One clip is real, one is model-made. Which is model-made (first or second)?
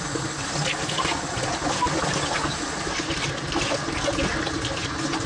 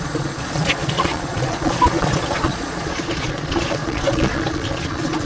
second